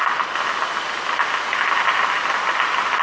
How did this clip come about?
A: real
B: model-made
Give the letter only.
A